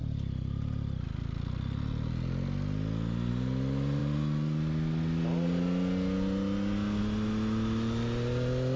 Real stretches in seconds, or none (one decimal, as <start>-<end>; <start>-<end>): 0.0-8.8